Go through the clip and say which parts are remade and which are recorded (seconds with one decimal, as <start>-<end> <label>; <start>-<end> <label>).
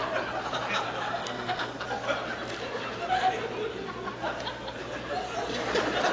0.0-1.1 recorded; 1.1-1.8 remade; 1.8-6.1 recorded